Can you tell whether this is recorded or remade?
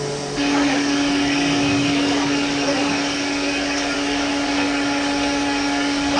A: remade